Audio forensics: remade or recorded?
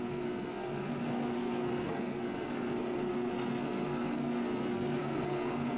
remade